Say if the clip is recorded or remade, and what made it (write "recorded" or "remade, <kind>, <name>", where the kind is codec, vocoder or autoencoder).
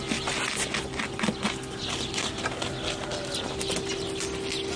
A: recorded